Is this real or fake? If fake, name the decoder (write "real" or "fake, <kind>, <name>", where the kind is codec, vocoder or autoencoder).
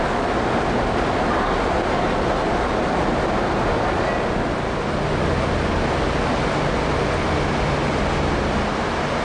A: real